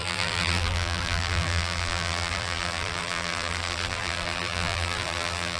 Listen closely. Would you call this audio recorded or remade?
remade